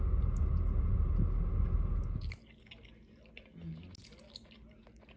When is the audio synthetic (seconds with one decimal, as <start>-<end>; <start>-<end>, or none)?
none